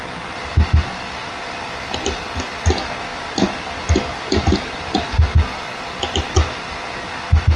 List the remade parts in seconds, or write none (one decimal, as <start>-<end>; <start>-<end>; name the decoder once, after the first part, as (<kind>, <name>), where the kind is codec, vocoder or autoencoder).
none